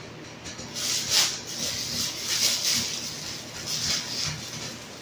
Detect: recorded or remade recorded